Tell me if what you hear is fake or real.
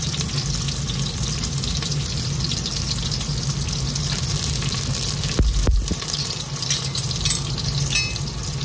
real